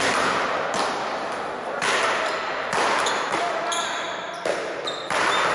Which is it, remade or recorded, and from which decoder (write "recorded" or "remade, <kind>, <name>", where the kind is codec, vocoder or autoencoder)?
recorded